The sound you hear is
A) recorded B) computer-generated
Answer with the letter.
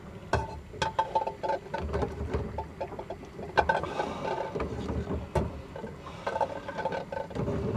A